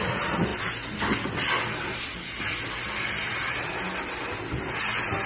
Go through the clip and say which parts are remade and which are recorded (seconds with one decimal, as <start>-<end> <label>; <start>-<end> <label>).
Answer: 0.0-5.3 recorded